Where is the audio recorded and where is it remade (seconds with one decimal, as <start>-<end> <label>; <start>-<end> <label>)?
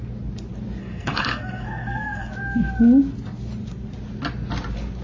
0.0-0.8 recorded; 0.8-2.3 remade; 2.3-5.0 recorded